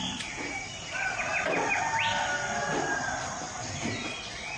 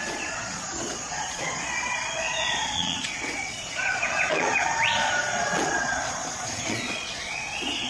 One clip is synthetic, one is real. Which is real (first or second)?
first